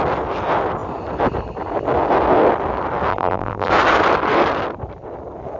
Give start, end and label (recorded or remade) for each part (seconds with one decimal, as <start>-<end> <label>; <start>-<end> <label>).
0.0-3.1 recorded; 3.1-3.7 remade; 3.7-5.6 recorded